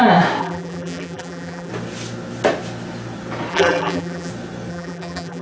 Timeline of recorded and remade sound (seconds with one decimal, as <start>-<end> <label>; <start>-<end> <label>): 0.0-0.4 recorded; 0.4-1.7 remade; 1.7-3.5 recorded; 3.5-4.3 remade; 4.3-4.7 recorded; 4.7-5.4 remade